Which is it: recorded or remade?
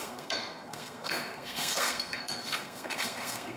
remade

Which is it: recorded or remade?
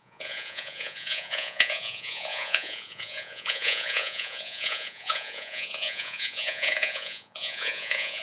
remade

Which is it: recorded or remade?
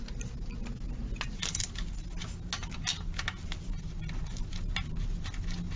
recorded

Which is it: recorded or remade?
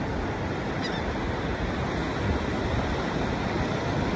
recorded